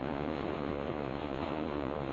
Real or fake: fake